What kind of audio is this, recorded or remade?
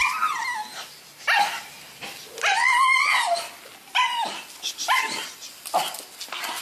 recorded